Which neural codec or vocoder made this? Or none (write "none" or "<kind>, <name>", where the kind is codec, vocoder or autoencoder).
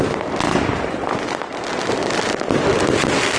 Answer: none